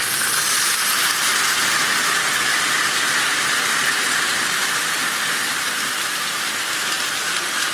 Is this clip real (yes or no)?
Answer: yes